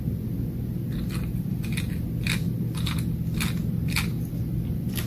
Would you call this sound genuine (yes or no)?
yes